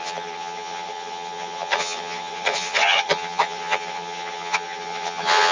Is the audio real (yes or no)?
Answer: no